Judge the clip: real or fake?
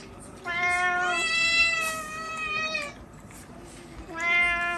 real